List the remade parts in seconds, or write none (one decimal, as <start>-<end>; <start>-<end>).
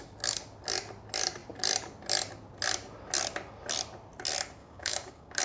4.6-5.4